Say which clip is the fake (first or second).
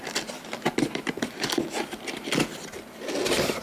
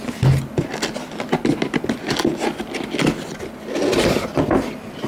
first